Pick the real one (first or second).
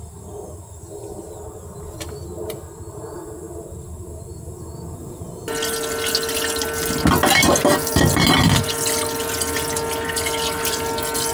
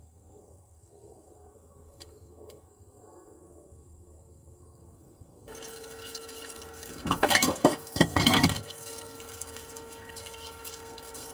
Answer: first